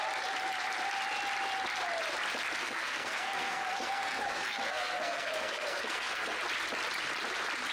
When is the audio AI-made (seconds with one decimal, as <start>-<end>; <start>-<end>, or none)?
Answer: 2.6-6.4